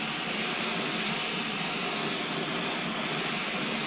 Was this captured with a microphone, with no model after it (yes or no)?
yes